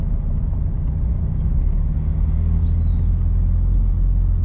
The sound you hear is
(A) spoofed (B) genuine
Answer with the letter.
B